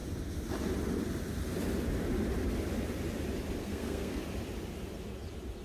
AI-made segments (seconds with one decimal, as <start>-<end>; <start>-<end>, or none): 3.6-4.2